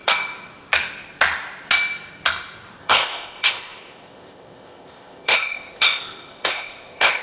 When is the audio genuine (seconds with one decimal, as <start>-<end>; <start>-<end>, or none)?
0.0-2.8